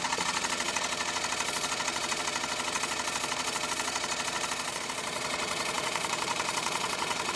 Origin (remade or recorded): remade